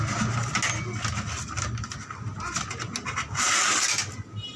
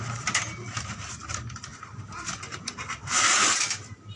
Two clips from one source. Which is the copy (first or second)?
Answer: second